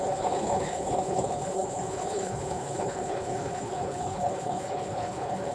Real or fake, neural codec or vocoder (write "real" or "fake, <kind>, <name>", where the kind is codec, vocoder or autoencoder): fake, codec, HILCodec